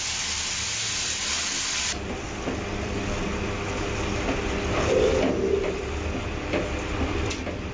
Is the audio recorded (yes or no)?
yes